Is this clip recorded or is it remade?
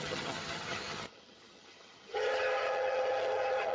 remade